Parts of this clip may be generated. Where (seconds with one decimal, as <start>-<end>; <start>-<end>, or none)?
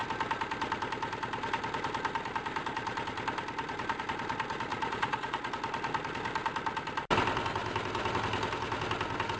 4.7-5.5